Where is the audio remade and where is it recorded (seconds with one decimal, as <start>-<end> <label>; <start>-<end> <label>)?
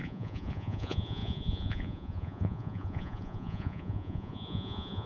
0.0-5.1 remade